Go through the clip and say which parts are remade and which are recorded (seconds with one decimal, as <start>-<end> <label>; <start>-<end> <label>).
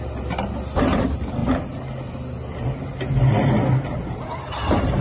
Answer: 0.0-5.0 recorded